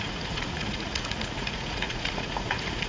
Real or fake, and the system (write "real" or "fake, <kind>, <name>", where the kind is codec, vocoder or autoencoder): fake, vocoder, Vocos